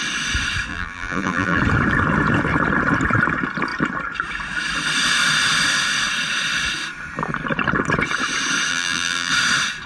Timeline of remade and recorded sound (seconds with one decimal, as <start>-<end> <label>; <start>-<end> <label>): 0.0-0.7 recorded; 0.7-1.6 remade; 1.6-8.7 recorded; 8.7-9.3 remade; 9.3-9.9 recorded